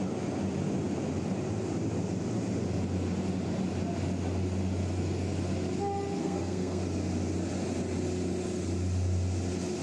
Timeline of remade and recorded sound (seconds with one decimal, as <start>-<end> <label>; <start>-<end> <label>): 0.0-6.2 recorded; 6.2-6.8 remade; 6.8-9.8 recorded